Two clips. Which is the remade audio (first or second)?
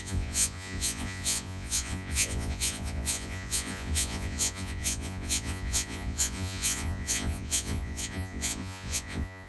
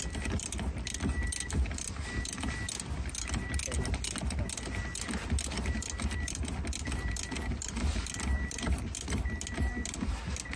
first